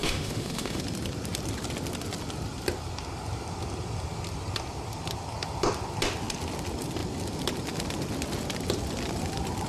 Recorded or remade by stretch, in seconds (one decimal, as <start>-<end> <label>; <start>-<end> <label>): 0.0-0.8 remade; 0.8-9.7 recorded